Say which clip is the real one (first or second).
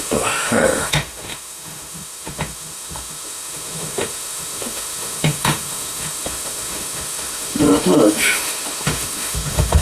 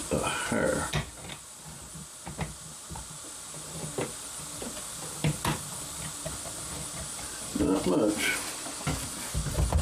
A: second